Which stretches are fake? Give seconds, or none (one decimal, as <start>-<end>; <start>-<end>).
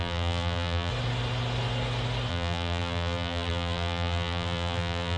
0.0-0.9; 2.3-5.2